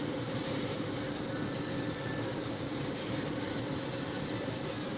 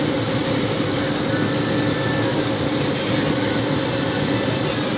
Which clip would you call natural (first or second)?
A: second